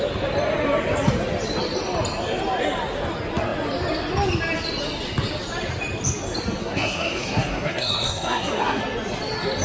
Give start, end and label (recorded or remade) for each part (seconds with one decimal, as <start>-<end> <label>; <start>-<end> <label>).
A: 0.0-6.6 recorded; 6.6-8.8 remade; 8.8-9.6 recorded